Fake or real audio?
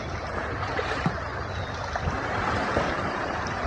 fake